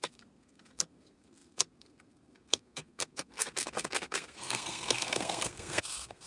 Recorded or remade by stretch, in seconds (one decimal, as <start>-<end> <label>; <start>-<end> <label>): 0.0-6.3 remade